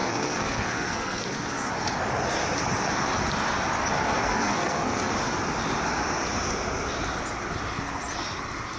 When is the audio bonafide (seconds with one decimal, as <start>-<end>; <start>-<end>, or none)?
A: 1.7-4.2; 5.1-8.8